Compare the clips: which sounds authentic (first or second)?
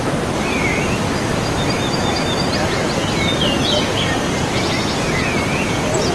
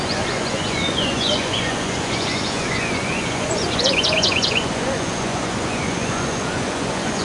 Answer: first